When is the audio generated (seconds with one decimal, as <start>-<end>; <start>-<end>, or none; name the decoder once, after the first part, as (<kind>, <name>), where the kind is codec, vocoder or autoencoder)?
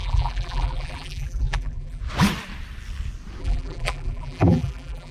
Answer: 0.0-2.0 (vocoder, BigVGAN v2); 3.4-5.1